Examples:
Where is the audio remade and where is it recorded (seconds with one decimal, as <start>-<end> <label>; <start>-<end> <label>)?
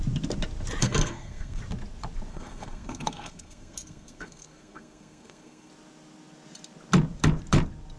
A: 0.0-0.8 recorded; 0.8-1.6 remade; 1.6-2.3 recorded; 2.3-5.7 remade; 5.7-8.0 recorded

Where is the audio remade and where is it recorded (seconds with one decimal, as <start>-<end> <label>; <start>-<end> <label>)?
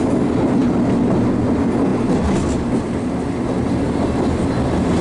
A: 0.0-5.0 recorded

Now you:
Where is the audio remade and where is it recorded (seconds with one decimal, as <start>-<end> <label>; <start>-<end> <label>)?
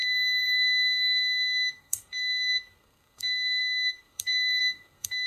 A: 0.0-5.3 remade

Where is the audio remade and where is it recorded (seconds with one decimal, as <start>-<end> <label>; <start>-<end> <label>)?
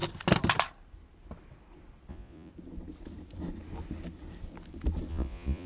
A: 0.0-2.1 recorded; 2.1-2.5 remade; 2.5-5.1 recorded; 5.1-5.7 remade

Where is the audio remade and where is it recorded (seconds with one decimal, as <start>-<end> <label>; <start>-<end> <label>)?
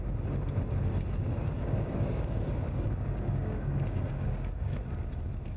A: 0.0-1.4 recorded; 1.4-4.8 remade; 4.8-5.6 recorded